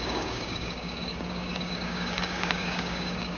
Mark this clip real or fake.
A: fake